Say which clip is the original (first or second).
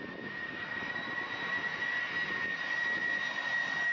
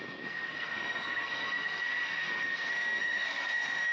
first